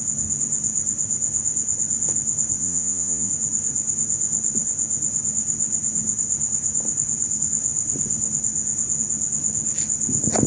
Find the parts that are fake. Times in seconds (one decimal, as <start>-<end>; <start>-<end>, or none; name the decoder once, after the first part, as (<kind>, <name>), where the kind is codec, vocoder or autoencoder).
2.6-3.3 (vocoder, Vocos)

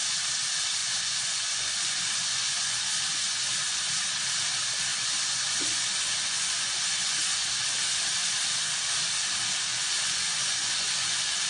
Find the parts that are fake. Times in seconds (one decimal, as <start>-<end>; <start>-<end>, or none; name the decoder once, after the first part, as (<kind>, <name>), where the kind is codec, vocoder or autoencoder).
0.8-3.9 (vocoder, Vocos); 4.9-7.5; 9.7-11.5

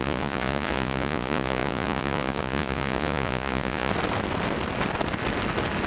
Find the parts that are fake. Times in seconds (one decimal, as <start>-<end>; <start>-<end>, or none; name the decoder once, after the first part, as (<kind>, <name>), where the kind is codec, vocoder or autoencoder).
0.0-3.9 (vocoder, Vocos)

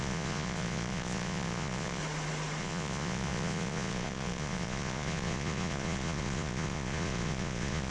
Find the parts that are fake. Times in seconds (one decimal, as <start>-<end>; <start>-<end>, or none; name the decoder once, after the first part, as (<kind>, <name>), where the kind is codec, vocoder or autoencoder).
0.0-2.0 (vocoder, Vocos); 2.6-7.9

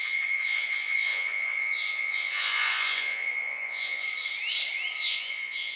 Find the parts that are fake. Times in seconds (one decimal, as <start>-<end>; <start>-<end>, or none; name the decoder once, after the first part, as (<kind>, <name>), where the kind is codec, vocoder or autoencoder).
0.0-4.1 (vocoder, Vocos); 5.0-5.8

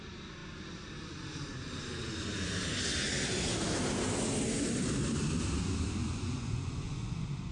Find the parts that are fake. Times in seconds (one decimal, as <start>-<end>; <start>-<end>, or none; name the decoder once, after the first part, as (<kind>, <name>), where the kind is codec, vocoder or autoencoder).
6.0-7.5 (vocoder, Vocos)

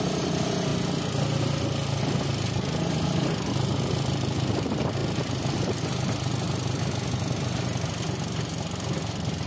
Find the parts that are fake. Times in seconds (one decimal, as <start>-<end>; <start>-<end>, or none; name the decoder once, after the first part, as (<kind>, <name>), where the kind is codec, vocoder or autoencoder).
none

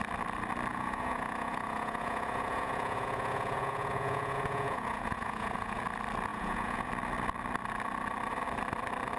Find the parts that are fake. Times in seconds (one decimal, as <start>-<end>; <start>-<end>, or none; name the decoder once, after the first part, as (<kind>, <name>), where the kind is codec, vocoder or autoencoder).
0.7-5.8 (vocoder, Vocos); 6.3-6.9